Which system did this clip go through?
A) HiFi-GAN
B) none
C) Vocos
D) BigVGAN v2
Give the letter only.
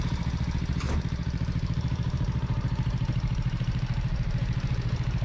D